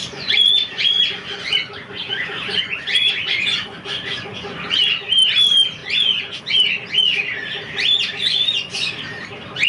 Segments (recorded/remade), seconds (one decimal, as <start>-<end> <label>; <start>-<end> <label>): 0.0-4.7 remade; 4.7-5.8 recorded; 5.8-6.4 remade; 6.4-8.2 recorded; 8.2-8.9 remade; 8.9-9.7 recorded